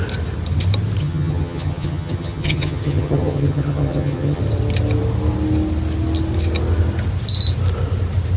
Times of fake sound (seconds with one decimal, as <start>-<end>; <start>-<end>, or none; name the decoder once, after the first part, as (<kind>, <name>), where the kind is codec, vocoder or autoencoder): 1.0-4.4 (vocoder, HiFi-GAN)